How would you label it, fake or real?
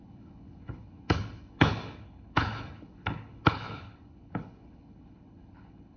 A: fake